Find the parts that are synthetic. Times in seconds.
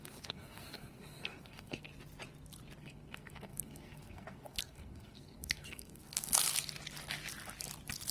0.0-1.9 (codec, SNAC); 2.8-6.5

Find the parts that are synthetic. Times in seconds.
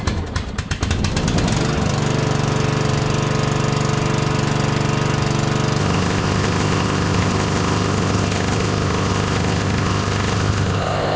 5.8-11.2 (codec, ZipCodec)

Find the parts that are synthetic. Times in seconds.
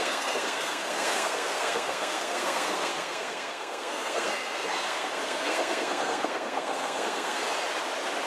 0.0-7.4 (codec, SNAC)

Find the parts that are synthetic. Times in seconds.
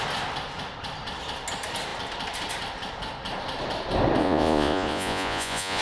4.2-5.8 (vocoder, Vocos)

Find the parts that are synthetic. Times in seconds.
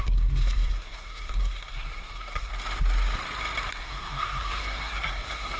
0.0-2.5 (codec, SNAC); 3.7-5.6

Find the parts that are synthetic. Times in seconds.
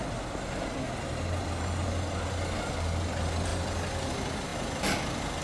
none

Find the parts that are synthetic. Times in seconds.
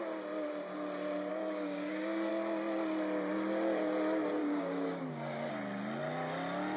1.3-2.3 (codec, DAC); 4.4-5.5